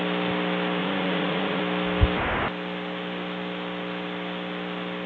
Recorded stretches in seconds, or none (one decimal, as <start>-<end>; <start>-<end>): 0.0-0.8; 1.6-5.1